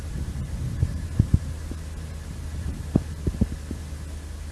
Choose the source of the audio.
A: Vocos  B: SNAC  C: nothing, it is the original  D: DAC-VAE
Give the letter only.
C